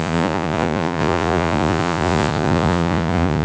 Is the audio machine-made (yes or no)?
yes